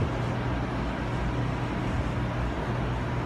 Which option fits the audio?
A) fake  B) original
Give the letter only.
B